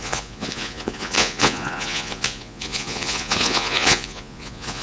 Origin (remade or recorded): remade